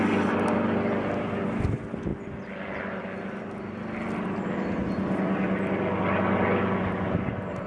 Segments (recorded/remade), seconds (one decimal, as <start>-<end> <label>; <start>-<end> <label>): 0.0-7.7 recorded

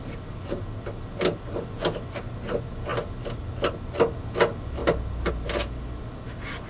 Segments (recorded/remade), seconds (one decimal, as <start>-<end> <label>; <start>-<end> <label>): 0.0-6.7 recorded

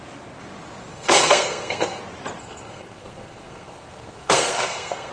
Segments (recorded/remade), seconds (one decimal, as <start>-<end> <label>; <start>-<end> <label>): 0.0-0.9 recorded; 0.9-2.0 remade; 2.0-2.4 recorded; 2.4-5.1 remade

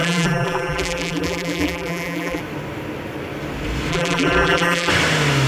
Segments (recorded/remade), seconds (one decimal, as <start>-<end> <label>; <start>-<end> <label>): 0.0-2.4 remade; 2.4-3.9 recorded; 3.9-4.9 remade; 4.9-5.5 recorded

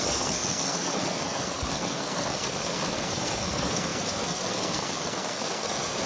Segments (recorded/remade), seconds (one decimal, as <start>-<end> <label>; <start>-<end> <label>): 0.0-6.1 remade

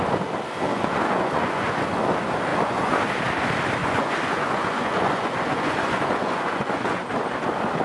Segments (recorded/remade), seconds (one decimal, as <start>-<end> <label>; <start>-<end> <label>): 0.0-0.7 recorded; 0.7-2.0 remade; 2.0-2.5 recorded; 2.5-3.0 remade; 3.0-3.8 recorded; 3.8-7.0 remade; 7.0-7.8 recorded